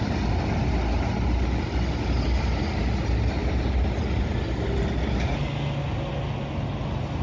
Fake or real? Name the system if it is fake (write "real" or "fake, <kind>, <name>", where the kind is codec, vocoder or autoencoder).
real